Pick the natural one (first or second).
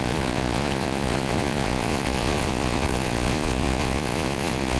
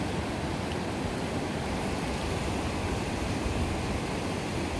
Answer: second